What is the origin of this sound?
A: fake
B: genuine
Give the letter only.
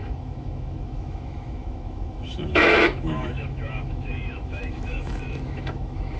A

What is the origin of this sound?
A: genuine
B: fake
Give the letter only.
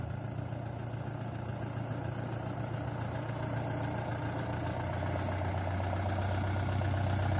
A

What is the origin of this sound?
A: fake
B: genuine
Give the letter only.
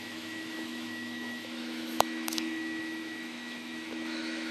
A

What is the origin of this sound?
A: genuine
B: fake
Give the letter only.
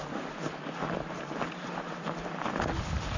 A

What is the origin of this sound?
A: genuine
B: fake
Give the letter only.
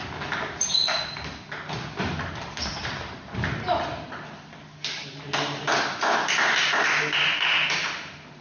A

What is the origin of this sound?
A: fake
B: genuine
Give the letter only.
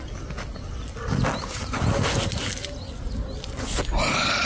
B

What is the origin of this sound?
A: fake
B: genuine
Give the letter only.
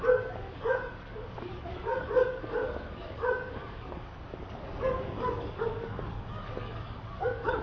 A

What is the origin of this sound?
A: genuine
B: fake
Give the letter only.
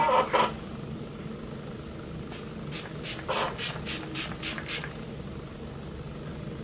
A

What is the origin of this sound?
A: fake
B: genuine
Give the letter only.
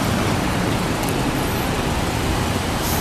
A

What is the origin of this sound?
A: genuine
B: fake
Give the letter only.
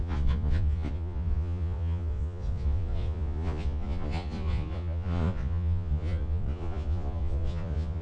B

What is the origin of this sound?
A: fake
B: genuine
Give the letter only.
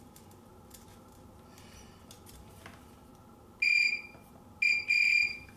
B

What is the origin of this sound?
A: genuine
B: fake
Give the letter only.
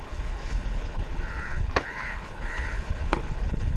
B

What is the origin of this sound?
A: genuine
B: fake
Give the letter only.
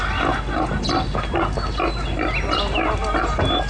A